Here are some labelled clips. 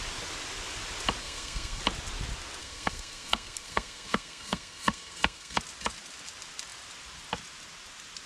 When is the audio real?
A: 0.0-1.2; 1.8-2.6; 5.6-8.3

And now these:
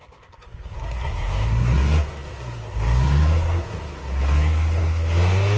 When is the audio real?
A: none